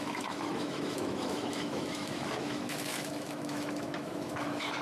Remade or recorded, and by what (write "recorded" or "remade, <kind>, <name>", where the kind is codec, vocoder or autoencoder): remade, autoencoder, DAC-VAE